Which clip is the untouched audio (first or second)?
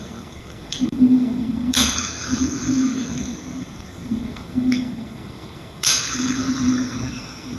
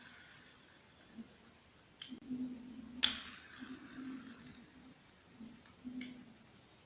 second